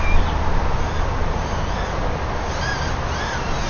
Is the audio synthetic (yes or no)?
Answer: no